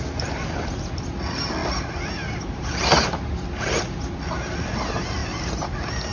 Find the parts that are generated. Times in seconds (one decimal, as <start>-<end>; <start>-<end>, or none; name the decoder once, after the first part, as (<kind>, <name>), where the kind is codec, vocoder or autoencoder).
none